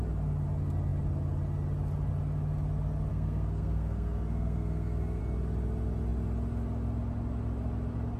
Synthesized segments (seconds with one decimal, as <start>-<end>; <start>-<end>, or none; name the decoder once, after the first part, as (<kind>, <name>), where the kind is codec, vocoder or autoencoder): 3.1-5.2 (codec, SNAC)